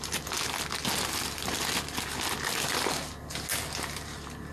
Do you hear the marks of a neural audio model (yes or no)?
no